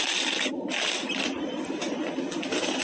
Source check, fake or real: real